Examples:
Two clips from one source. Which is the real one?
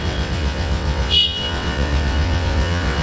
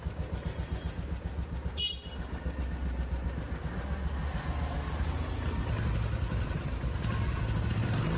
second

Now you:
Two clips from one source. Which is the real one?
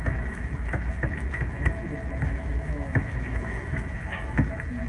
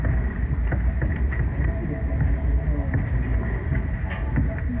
second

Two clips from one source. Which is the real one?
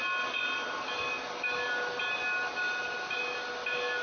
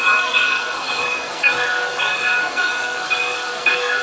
first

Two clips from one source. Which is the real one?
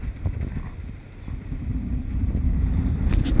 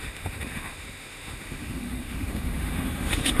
first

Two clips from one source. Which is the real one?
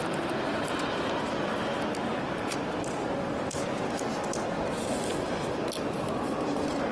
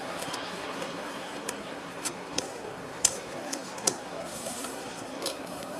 first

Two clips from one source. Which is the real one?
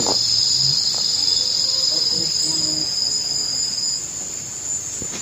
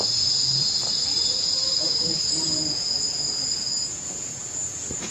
first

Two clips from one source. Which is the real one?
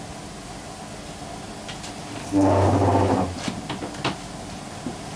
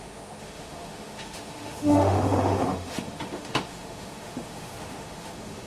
first